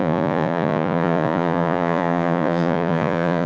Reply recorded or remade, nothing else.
remade